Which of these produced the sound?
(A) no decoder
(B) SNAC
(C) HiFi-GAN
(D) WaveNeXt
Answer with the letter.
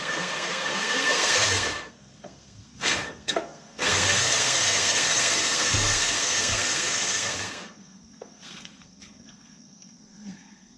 B